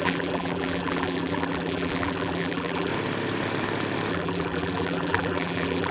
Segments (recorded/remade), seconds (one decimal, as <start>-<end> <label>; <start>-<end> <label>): 0.0-2.9 remade; 2.9-4.1 recorded; 4.1-5.9 remade